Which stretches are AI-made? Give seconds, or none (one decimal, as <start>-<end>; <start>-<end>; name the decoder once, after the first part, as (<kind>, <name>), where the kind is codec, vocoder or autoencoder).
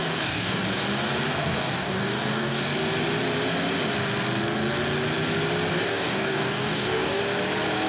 0.0-0.6 (codec, DAC); 1.4-2.6; 5.7-7.2